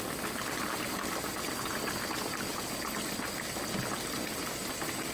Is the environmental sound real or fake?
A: real